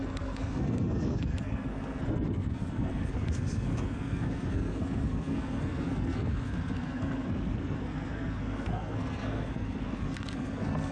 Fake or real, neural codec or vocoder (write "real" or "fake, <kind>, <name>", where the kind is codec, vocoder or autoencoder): fake, codec, SNAC